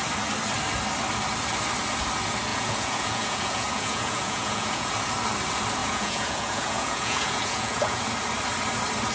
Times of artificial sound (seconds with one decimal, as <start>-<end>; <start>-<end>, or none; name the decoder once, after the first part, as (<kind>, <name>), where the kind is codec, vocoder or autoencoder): 2.5-4.9 (vocoder, Vocos); 5.8-8.0